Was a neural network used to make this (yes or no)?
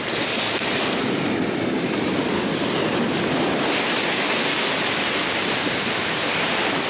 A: no